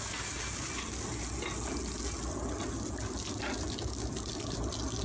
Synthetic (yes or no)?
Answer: no